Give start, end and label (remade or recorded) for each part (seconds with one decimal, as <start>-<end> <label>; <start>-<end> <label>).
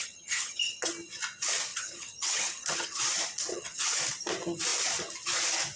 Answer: 0.0-0.9 remade; 0.9-1.7 recorded; 1.7-3.0 remade; 3.0-3.5 recorded; 3.5-4.0 remade; 4.0-5.8 recorded